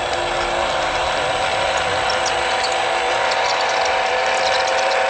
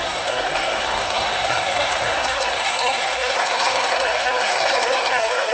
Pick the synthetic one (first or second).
second